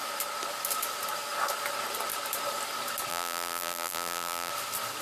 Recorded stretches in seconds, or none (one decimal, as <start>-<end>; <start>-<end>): 0.0-3.1; 4.5-5.0